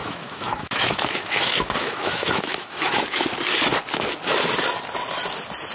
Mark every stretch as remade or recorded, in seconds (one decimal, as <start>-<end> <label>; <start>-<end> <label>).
0.0-3.0 remade; 3.0-5.7 recorded